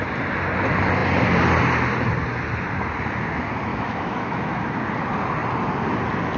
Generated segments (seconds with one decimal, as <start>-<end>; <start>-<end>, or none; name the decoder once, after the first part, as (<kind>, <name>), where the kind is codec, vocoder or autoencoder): 3.7-4.8 (autoencoder, DAC-VAE)